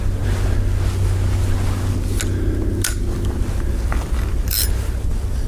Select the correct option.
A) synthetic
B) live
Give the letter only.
B